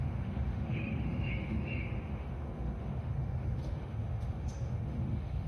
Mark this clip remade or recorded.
remade